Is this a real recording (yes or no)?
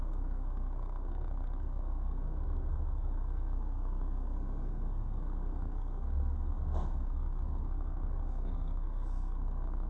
no